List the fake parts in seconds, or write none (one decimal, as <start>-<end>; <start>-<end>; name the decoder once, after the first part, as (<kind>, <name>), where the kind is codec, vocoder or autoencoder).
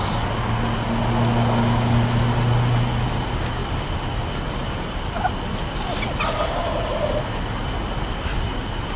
none